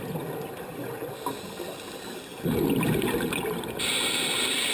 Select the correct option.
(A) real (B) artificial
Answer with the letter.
A